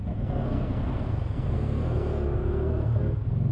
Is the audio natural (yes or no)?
no